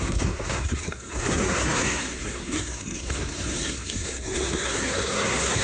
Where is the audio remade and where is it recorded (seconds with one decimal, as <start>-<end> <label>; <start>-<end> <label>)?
0.0-5.6 remade